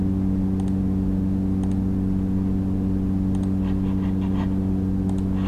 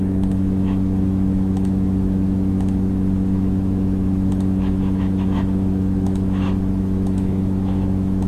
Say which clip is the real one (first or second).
first